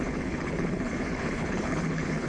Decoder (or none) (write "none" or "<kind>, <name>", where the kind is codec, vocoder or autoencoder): codec, HILCodec